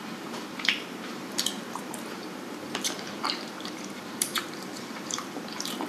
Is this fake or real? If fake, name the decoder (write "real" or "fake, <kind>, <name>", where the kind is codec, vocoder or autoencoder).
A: fake, vocoder, BigVGAN v2